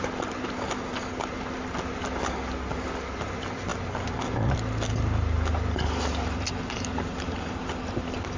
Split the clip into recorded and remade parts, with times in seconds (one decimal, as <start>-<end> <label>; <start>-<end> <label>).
0.0-8.4 recorded